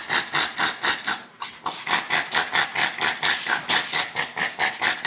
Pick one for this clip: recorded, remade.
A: recorded